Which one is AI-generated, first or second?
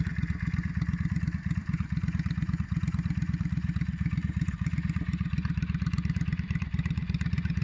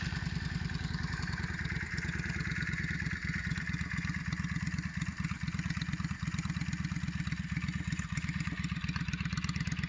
first